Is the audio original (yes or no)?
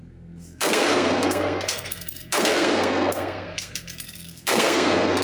no